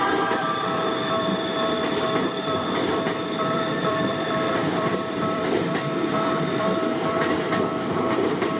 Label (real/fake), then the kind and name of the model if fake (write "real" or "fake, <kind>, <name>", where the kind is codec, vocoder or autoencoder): fake, vocoder, BigVGAN v2